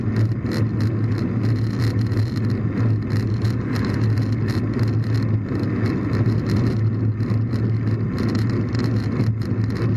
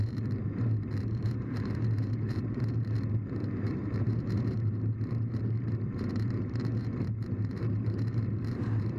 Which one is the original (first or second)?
first